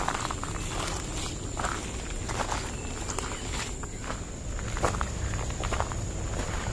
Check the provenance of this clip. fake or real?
real